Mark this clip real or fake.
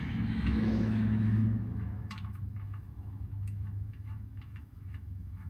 fake